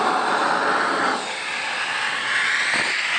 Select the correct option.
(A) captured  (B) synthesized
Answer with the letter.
A